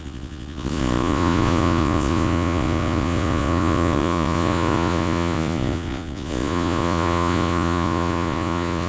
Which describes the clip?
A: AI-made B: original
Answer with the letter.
A